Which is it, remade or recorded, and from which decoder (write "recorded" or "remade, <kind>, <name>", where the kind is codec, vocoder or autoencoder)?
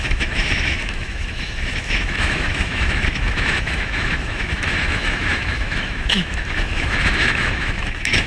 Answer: remade, autoencoder, DAC-VAE